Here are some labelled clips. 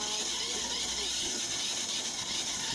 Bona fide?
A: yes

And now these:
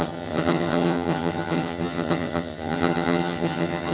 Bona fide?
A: no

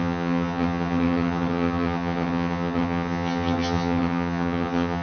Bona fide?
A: no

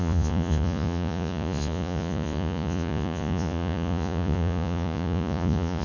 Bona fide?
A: no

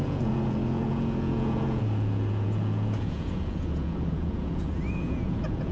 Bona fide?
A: no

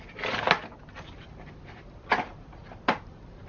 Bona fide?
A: yes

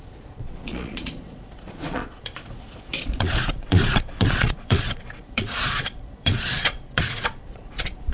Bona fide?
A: no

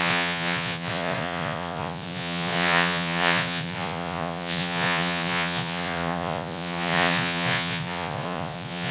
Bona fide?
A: no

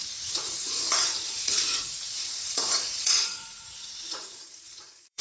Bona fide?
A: no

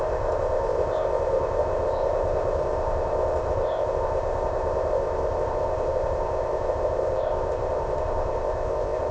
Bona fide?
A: no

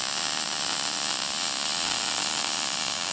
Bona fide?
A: yes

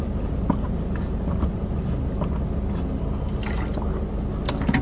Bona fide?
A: yes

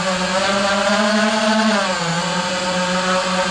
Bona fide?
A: yes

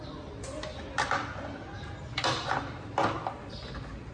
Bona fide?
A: yes